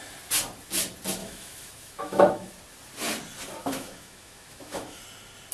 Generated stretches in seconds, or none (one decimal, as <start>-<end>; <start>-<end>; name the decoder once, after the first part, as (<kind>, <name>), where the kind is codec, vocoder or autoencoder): 1.2-2.5 (autoencoder, DAC-VAE); 3.6-5.0